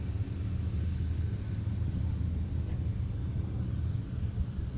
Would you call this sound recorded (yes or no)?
yes